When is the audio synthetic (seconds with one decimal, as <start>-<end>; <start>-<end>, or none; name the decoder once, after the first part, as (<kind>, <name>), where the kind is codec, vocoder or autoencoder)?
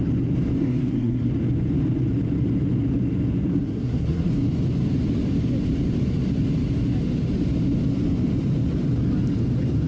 0.6-1.3 (codec, SNAC); 3.5-4.3